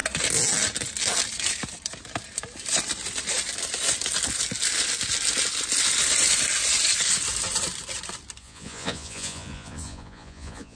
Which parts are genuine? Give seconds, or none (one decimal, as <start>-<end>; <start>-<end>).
0.0-8.4